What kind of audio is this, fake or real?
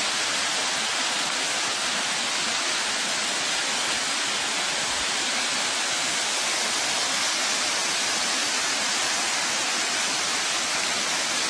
real